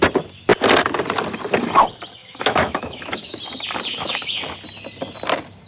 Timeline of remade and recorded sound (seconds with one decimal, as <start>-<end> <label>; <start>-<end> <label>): 0.0-2.2 recorded; 2.2-3.4 remade; 3.4-3.9 recorded; 3.9-4.4 remade; 4.4-5.7 recorded